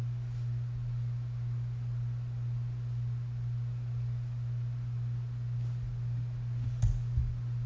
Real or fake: real